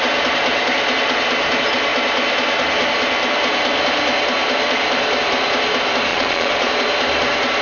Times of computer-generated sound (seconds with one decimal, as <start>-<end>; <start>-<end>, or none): 6.1-6.7